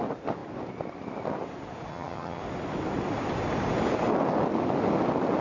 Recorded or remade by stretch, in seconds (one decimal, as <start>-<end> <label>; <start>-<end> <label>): 0.0-1.9 recorded; 1.9-2.4 remade; 2.4-5.4 recorded